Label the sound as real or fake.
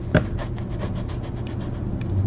real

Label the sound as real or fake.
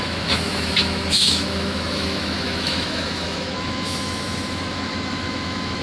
fake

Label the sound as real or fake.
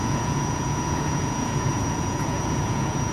fake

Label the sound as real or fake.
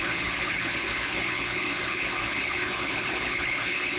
fake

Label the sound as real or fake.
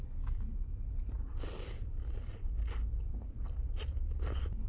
real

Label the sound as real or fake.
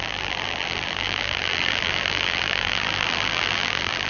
fake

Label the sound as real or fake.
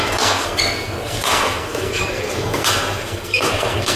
fake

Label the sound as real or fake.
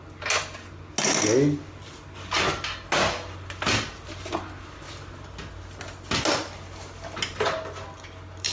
real